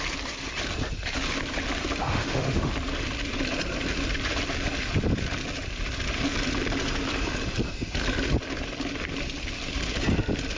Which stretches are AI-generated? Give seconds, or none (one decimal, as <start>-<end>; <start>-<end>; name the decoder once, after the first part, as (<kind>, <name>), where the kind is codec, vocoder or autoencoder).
2.0-2.7 (autoencoder, DAC-VAE)